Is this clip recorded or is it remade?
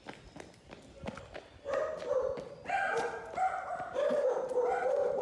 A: recorded